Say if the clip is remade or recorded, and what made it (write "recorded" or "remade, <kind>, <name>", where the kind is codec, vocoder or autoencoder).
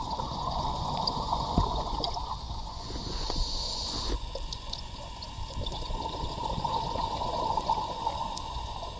remade, vocoder, Vocos